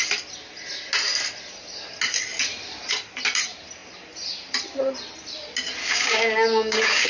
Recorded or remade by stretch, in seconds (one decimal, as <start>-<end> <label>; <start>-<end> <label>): 0.0-5.8 recorded; 5.8-7.1 remade